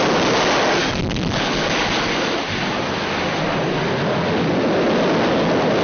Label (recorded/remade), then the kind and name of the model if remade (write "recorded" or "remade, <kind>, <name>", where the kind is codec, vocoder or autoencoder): recorded